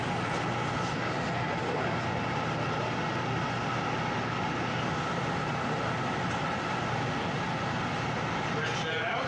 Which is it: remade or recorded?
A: recorded